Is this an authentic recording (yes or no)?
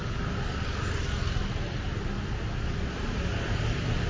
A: yes